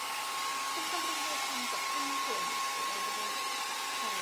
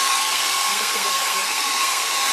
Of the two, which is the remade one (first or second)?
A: second